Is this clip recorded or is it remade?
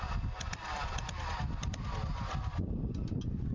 recorded